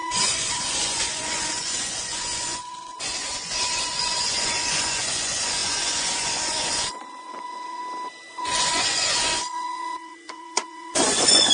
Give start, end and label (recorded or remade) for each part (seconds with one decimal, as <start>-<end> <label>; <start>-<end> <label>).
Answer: 0.0-7.8 remade; 7.8-8.3 recorded; 8.3-11.5 remade